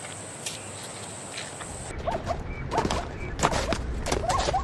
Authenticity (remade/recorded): recorded